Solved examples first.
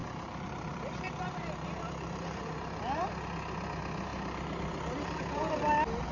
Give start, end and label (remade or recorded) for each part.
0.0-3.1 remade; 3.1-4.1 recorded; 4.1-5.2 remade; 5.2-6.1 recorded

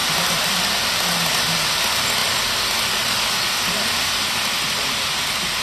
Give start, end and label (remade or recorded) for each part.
0.0-5.6 recorded

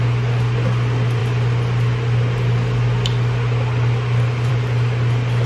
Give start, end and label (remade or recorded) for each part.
0.0-5.5 recorded

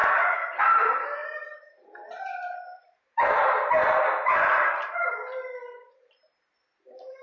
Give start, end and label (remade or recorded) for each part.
0.0-1.2 recorded; 1.2-5.1 remade; 5.1-7.2 recorded

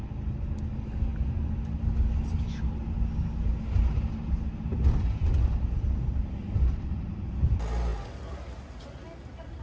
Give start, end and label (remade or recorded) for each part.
0.0-6.4 recorded; 6.4-7.5 remade; 7.5-9.6 recorded